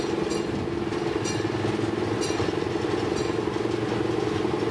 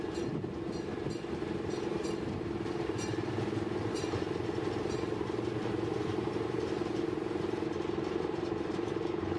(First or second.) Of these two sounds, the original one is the first